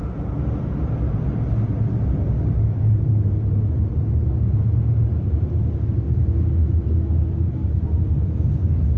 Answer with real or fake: real